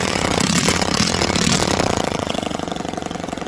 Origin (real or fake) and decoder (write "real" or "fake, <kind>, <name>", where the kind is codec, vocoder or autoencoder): fake, vocoder, WaveNeXt